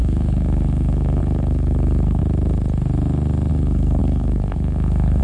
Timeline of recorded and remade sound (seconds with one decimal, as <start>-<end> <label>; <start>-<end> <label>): 0.0-2.2 remade; 2.2-3.5 recorded; 3.5-5.2 remade